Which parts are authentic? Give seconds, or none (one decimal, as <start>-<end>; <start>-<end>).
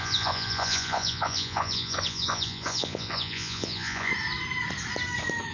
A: 4.1-5.5